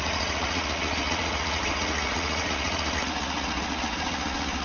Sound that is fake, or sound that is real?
fake